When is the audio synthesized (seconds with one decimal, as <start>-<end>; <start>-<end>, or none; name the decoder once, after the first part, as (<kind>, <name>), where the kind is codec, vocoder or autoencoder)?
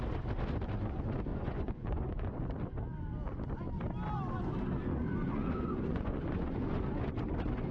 1.3-2.4 (vocoder, Vocos); 5.2-6.8